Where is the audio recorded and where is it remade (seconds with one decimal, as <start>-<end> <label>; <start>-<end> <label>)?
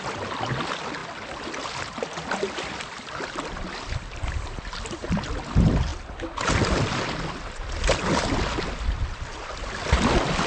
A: 0.0-5.9 remade; 5.9-8.7 recorded; 8.7-10.5 remade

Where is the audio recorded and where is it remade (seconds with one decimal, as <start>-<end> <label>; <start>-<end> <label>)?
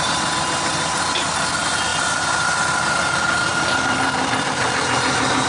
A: 0.0-1.9 recorded; 1.9-2.6 remade; 2.6-3.5 recorded; 3.5-4.7 remade; 4.7-5.5 recorded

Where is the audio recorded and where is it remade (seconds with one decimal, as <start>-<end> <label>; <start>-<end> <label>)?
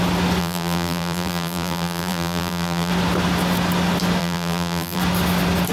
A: 0.0-0.4 recorded; 0.4-2.9 remade; 2.9-4.2 recorded; 4.2-5.0 remade; 5.0-5.7 recorded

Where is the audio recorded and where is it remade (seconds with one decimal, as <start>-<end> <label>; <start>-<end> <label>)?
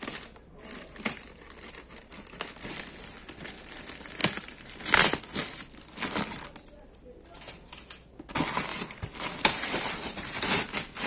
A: 0.0-8.7 recorded; 8.7-10.6 remade; 10.6-11.1 recorded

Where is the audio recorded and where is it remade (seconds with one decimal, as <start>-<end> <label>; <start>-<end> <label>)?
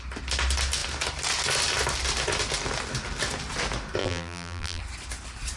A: 0.0-4.0 recorded; 4.0-4.8 remade; 4.8-5.6 recorded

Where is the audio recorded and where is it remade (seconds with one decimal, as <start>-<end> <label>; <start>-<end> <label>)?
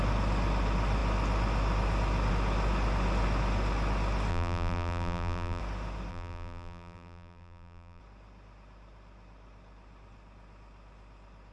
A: 0.0-4.3 recorded; 4.3-5.6 remade; 5.6-6.1 recorded; 6.1-8.0 remade; 8.0-11.5 recorded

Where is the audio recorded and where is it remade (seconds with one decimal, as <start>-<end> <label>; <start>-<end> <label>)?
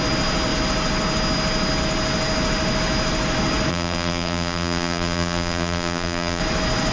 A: 0.0-3.7 recorded; 3.7-6.4 remade; 6.4-6.9 recorded